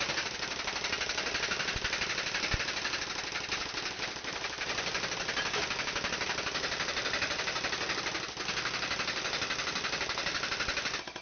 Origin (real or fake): real